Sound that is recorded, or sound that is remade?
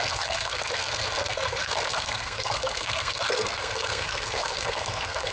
remade